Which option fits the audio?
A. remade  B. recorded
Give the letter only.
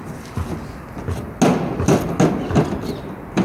B